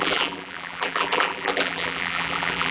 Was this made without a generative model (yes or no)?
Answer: no